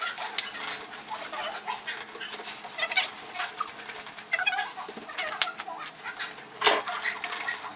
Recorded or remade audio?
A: recorded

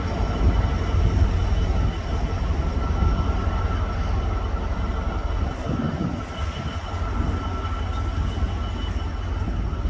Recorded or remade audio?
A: recorded